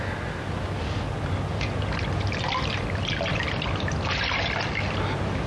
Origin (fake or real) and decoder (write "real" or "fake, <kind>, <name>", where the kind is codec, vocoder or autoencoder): real